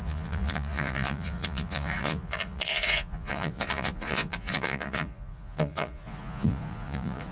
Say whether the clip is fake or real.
fake